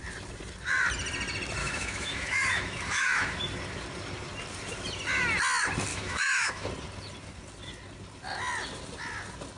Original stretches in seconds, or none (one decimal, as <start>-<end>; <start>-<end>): 0.0-1.6; 3.4-5.9; 6.7-9.6